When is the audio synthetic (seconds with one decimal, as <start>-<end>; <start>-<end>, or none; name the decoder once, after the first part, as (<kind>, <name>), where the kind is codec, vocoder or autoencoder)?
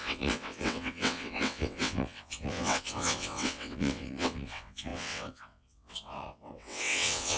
0.0-7.4 (vocoder, WaveNeXt)